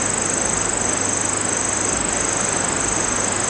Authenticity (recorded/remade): recorded